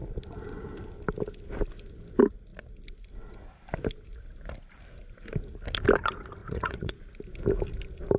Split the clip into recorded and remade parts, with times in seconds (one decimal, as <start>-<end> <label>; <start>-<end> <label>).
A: 0.0-6.4 recorded; 6.4-6.9 remade; 6.9-8.2 recorded